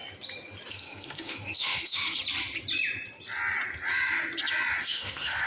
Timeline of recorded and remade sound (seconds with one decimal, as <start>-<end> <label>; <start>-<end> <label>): 0.0-0.7 recorded; 0.7-2.2 remade; 2.2-4.8 recorded; 4.8-5.5 remade